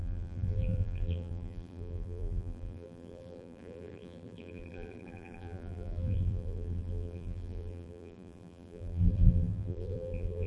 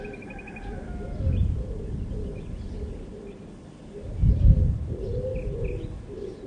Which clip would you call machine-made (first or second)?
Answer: first